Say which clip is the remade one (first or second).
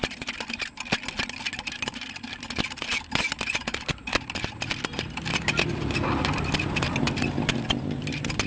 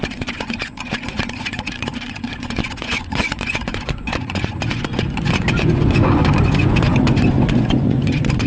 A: second